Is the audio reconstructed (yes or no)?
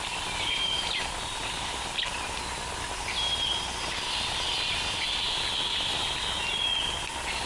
no